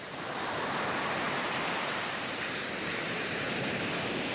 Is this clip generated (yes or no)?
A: yes